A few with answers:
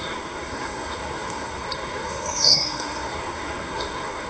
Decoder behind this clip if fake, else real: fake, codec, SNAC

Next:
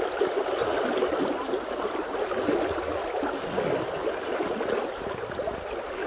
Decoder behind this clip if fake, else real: real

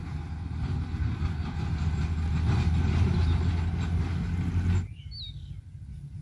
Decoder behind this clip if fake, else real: real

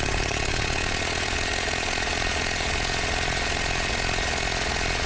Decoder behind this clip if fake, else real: fake, vocoder, Vocos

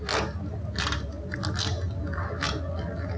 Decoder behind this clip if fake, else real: real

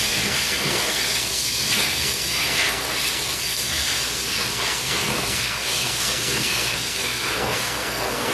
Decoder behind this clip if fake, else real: fake, codec, SNAC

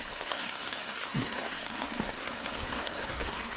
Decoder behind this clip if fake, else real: fake, codec, SNAC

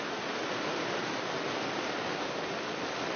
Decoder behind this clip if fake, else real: real